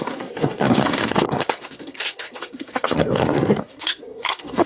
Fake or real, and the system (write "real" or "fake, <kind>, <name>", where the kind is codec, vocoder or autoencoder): fake, codec, SNAC